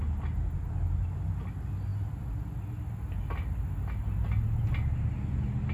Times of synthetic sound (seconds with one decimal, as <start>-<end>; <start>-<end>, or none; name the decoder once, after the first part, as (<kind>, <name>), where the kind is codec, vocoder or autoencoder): none